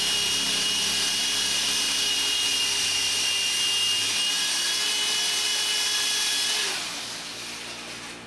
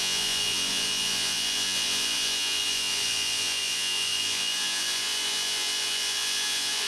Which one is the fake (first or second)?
second